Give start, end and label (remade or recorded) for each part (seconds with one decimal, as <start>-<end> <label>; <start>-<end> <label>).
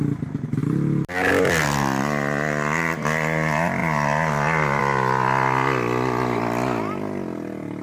0.0-7.8 recorded